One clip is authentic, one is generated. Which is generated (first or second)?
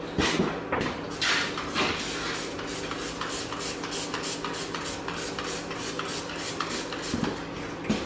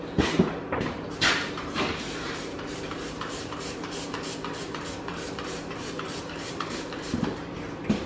second